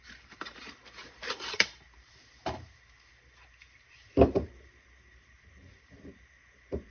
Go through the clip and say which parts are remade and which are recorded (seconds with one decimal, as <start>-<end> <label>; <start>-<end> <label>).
0.0-6.9 remade